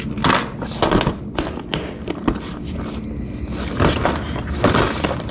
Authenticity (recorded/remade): recorded